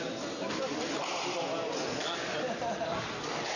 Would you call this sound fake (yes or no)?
no